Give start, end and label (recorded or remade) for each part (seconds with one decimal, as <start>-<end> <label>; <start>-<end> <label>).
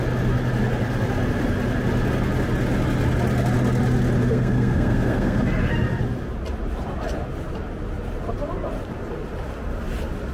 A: 0.0-4.2 recorded; 4.2-5.4 remade; 5.4-10.3 recorded